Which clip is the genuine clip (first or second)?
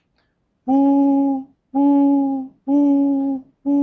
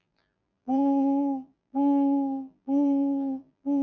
first